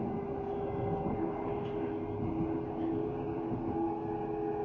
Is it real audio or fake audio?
real